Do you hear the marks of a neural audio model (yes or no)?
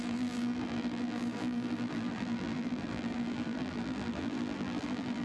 yes